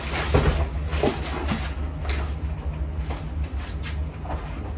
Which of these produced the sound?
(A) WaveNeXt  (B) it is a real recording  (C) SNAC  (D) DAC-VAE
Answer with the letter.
B